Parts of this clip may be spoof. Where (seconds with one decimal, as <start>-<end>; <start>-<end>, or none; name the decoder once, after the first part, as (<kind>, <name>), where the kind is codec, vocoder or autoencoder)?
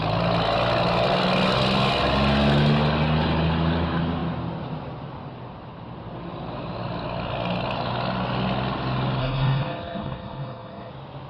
9.2-10.9 (codec, SNAC)